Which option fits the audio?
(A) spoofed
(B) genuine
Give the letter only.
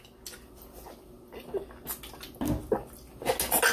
B